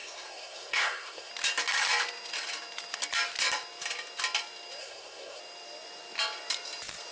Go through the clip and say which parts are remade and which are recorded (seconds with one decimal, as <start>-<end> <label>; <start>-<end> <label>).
0.0-1.3 remade; 1.3-4.8 recorded; 4.8-5.4 remade; 5.4-7.1 recorded